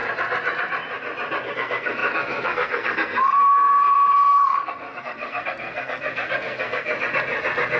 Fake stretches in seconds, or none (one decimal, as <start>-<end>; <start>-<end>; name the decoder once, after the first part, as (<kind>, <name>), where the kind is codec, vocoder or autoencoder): 1.5-6.9 (codec, SNAC)